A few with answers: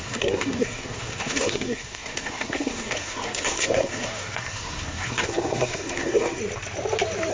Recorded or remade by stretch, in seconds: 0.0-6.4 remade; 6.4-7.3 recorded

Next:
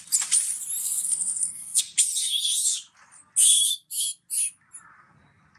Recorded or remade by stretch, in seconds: 0.0-0.8 recorded; 0.8-1.8 remade; 1.8-5.6 recorded

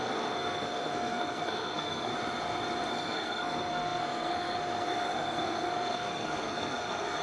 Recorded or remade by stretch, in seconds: 0.0-2.1 remade; 2.1-2.9 recorded; 2.9-7.2 remade